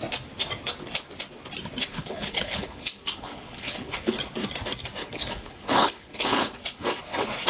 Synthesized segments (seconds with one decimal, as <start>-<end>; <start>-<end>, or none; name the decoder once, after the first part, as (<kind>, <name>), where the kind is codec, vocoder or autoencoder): 1.9-4.2 (codec, HILCodec); 5.0-6.9